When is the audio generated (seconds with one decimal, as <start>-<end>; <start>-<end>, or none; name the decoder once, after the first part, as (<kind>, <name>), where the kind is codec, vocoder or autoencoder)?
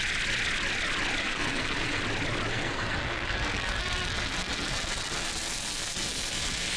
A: 1.2-2.0 (codec, SNAC); 2.5-6.8